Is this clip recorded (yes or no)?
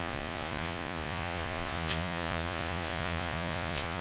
no